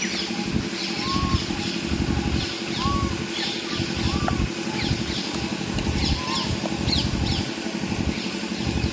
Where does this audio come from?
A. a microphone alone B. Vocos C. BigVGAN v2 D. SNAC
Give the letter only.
A